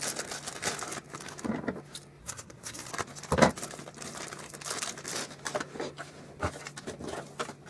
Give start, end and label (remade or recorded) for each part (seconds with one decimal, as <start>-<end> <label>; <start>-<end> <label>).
0.0-2.2 recorded; 2.2-2.9 remade; 2.9-7.7 recorded